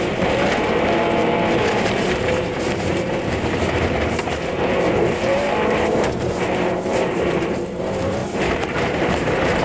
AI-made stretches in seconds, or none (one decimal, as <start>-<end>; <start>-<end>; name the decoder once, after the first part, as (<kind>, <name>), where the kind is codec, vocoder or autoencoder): 0.0-8.2 (vocoder, BigVGAN v2); 8.7-9.6